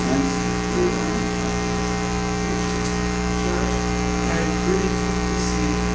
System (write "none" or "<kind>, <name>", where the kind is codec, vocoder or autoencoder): autoencoder, DAC-VAE